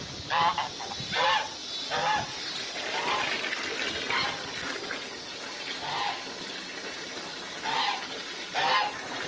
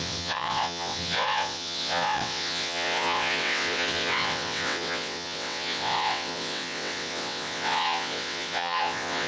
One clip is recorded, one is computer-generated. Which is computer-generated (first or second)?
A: second